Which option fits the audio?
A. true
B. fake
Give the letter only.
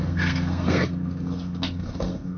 B